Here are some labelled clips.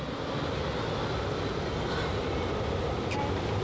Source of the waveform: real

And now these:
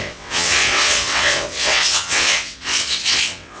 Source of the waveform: fake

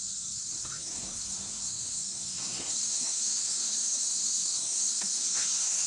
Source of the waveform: fake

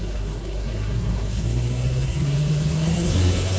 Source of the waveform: fake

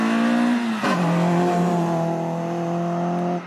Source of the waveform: real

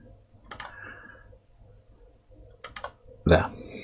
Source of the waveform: real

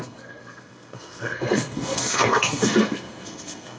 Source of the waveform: fake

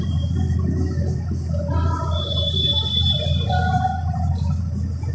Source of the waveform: real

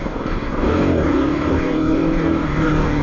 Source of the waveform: fake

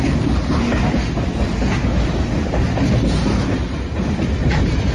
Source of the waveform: real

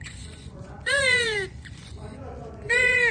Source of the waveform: fake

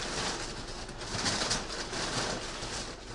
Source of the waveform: real